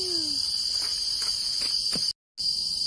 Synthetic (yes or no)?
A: no